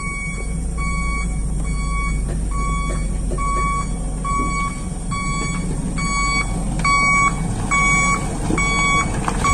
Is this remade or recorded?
recorded